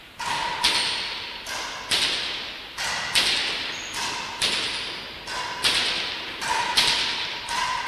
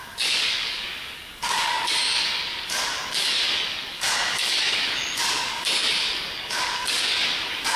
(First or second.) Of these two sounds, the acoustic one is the first